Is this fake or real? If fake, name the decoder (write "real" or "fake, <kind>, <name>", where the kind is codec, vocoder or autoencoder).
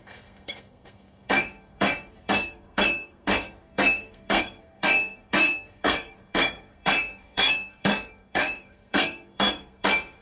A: fake, codec, SNAC